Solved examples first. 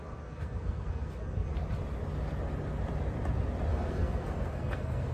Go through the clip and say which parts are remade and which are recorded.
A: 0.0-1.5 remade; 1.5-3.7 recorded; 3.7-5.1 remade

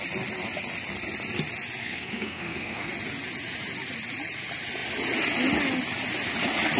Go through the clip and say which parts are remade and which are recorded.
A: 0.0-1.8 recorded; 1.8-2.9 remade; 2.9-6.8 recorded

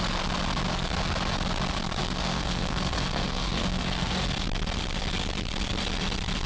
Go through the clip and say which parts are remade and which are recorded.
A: 0.0-2.0 recorded; 2.0-4.1 remade; 4.1-6.5 recorded

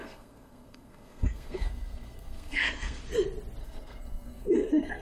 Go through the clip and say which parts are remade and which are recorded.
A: 0.0-3.0 remade; 3.0-3.6 recorded; 3.6-5.0 remade

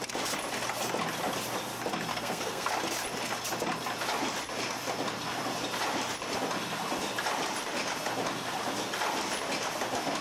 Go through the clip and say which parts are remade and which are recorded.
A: 0.0-2.1 recorded; 2.1-2.7 remade; 2.7-10.2 recorded